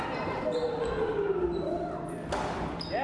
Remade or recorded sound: recorded